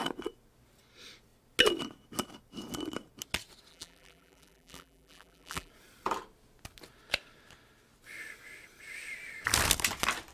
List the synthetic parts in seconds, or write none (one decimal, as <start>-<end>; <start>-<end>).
3.7-5.7